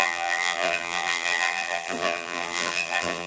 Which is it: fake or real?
fake